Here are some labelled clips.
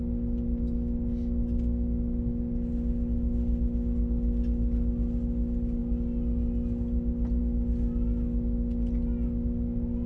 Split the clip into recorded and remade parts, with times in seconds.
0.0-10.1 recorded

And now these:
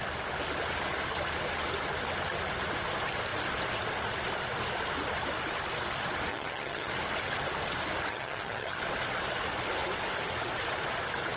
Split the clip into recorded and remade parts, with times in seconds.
0.0-6.3 recorded; 6.3-6.9 remade; 6.9-8.1 recorded; 8.1-8.8 remade; 8.8-11.4 recorded

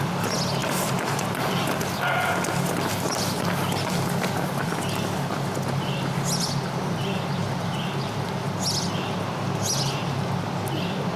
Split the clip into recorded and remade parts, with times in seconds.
0.0-0.6 recorded; 0.6-1.7 remade; 1.7-11.2 recorded

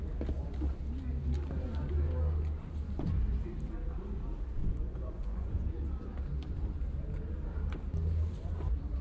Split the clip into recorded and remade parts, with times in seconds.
0.0-4.6 recorded; 4.6-5.8 remade; 5.8-9.0 recorded

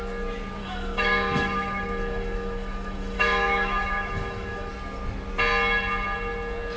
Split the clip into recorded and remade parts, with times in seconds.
0.0-0.6 recorded; 0.6-4.7 remade; 4.7-6.8 recorded

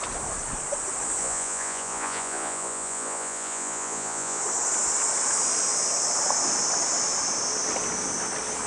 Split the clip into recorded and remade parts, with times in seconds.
0.0-1.2 recorded; 1.2-4.4 remade; 4.4-8.7 recorded